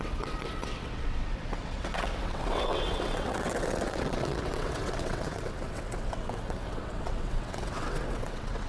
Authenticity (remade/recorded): remade